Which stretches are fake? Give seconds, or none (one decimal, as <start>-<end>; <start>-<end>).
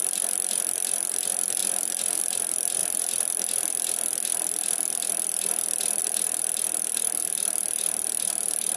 none